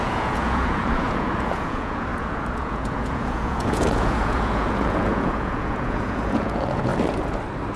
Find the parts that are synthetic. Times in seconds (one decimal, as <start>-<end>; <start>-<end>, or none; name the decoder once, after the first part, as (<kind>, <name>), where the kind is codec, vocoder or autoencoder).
0.0-6.9 (vocoder, Vocos)